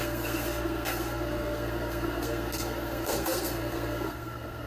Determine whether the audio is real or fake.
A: fake